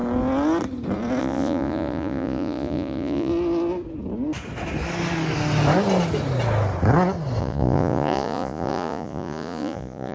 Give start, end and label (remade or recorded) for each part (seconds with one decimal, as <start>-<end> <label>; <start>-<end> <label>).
0.0-1.2 recorded; 1.2-3.3 remade; 3.3-7.4 recorded; 7.4-10.1 remade